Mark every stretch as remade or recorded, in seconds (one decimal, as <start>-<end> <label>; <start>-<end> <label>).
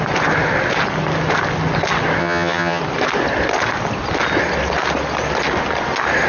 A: 0.0-2.2 recorded; 2.2-2.8 remade; 2.8-6.3 recorded